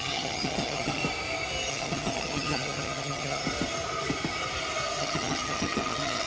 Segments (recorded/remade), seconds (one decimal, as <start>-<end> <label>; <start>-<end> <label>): 0.0-1.0 remade; 1.0-1.7 recorded; 1.7-3.4 remade; 3.4-5.0 recorded; 5.0-6.3 remade